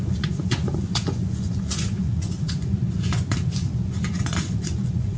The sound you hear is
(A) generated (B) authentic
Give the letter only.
A